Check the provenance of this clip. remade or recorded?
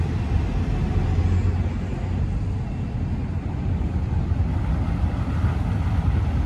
recorded